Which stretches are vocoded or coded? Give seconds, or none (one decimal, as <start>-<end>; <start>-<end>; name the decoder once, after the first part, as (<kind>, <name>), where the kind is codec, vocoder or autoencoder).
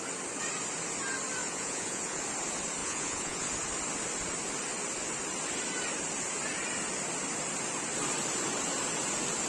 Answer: 1.4-2.2 (vocoder, Vocos); 2.8-3.5